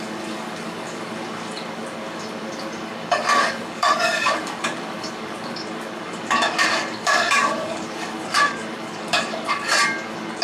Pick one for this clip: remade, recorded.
remade